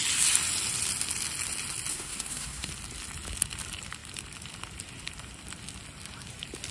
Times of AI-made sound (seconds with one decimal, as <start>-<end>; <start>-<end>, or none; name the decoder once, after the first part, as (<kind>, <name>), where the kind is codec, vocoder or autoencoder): 1.9-2.7 (codec, SNAC)